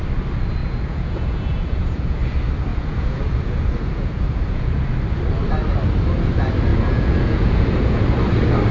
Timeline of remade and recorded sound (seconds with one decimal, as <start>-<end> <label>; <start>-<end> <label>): 0.0-0.6 recorded; 0.6-2.2 remade; 2.2-2.7 recorded; 2.7-4.9 remade; 4.9-6.7 recorded; 6.7-8.0 remade; 8.0-8.7 recorded